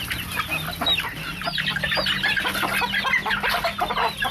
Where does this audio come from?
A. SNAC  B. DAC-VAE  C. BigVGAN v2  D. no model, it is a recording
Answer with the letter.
D